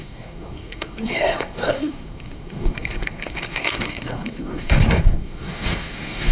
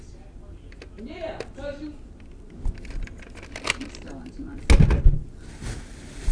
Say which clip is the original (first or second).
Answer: second